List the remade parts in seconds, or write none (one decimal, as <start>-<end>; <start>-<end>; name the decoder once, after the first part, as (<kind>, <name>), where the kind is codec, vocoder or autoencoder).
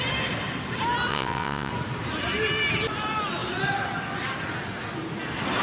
1.1-1.7 (vocoder, WaveNeXt)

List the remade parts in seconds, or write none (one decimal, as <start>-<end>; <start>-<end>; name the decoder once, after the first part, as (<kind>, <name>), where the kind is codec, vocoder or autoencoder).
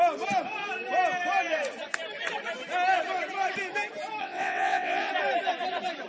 4.2-5.1 (vocoder, WaveNeXt)